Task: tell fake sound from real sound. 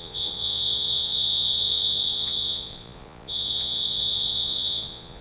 fake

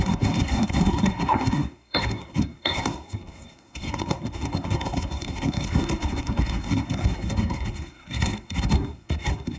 fake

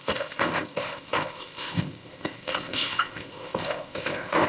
fake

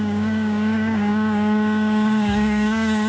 fake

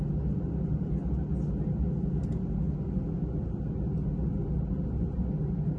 real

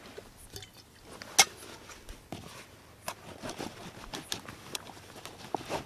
real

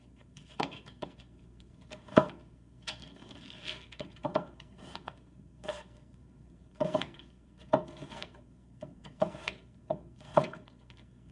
fake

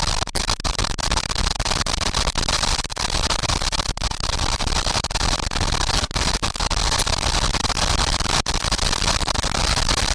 real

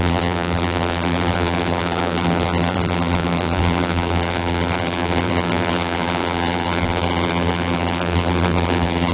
fake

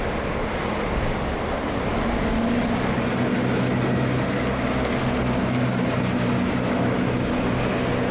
real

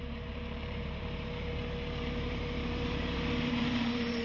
fake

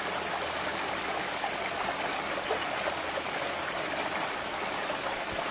real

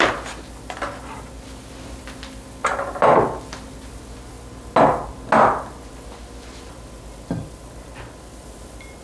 real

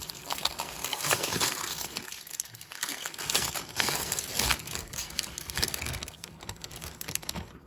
fake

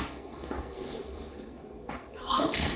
fake